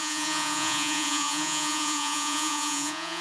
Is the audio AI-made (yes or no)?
yes